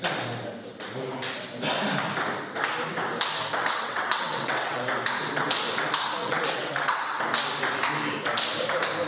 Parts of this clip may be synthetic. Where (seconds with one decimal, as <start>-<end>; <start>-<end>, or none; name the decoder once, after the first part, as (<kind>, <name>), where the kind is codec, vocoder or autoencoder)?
3.6-4.8 (vocoder, WaveNeXt); 6.2-7.2